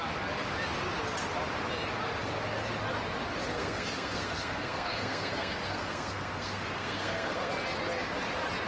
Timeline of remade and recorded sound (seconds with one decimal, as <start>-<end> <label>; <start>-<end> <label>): 0.0-3.5 recorded; 3.5-7.5 remade; 7.5-8.7 recorded